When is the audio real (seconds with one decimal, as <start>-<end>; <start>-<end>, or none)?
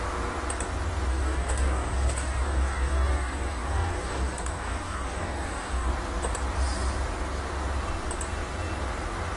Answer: 0.0-1.1; 5.9-9.4